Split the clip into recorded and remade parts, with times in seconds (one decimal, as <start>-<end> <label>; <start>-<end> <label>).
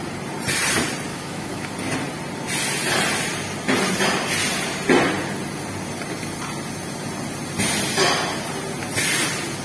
0.0-1.1 recorded; 1.1-1.7 remade; 1.7-9.6 recorded